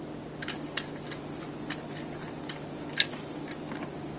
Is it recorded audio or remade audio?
recorded